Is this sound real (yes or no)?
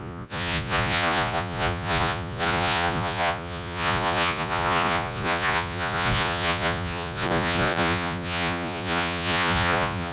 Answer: no